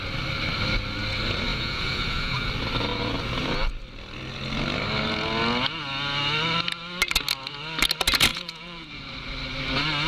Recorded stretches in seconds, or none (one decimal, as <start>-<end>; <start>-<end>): 0.0-1.5; 2.5-8.3; 8.9-10.1